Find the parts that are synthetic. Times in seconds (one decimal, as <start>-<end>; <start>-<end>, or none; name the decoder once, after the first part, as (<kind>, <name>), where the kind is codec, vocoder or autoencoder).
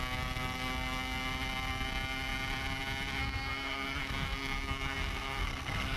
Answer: 3.2-6.0 (codec, SNAC)